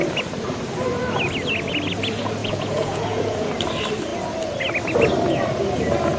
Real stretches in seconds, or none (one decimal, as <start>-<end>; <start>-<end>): 0.0-2.4; 3.5-6.2